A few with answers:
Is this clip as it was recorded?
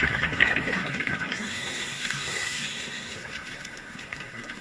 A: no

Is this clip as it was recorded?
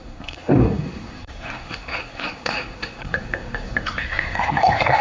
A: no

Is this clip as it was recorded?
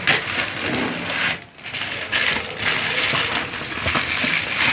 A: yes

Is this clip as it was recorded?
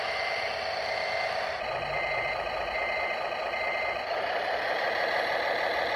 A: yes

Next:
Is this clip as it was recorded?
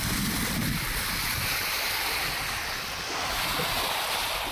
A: yes